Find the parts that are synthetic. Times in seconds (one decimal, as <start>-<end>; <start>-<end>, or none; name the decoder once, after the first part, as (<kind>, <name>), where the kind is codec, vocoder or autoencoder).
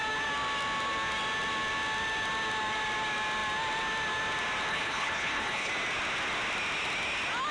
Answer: 4.7-5.7 (codec, HILCodec)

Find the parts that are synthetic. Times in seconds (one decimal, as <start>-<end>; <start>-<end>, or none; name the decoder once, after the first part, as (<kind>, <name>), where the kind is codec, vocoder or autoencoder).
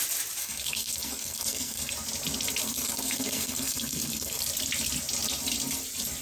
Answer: 0.4-1.9 (codec, SNAC); 2.6-4.4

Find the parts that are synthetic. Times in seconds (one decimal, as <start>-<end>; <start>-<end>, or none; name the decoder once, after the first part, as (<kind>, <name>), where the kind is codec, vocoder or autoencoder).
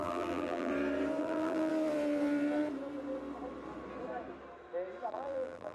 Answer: 0.0-0.7 (vocoder, BigVGAN v2); 1.2-1.7; 5.1-5.7